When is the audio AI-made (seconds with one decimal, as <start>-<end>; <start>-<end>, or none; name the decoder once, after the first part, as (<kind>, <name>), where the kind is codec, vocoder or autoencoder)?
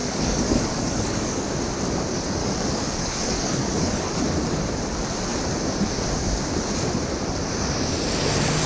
0.0-1.5 (codec, DAC); 2.4-4.2